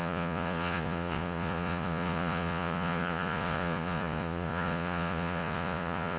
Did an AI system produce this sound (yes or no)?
yes